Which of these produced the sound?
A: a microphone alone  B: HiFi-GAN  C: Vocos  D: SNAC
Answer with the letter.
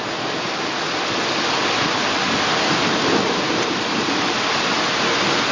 A